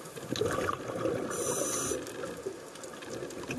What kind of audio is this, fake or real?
real